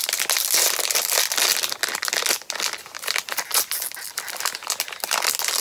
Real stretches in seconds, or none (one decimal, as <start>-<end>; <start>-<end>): 0.0-5.6